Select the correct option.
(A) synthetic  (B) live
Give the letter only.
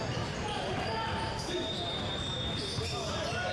B